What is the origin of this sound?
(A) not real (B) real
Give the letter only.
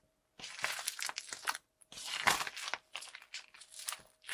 B